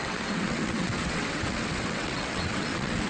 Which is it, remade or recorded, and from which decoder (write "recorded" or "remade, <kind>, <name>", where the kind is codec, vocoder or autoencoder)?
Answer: remade, vocoder, WaveNeXt